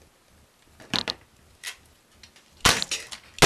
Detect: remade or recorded recorded